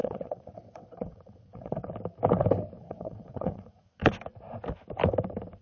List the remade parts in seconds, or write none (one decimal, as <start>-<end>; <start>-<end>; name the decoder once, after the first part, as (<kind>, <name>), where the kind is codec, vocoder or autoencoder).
0.0-1.9 (vocoder, WaveNeXt); 2.8-4.1